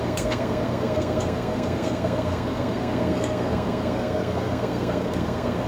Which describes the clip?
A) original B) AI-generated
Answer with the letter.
B